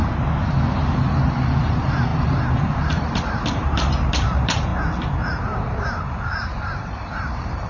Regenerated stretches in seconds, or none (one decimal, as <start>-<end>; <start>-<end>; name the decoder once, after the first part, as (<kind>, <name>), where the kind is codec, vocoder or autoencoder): 1.6-4.7 (vocoder, BigVGAN v2); 6.0-7.7